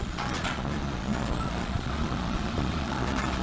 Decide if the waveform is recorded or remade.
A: remade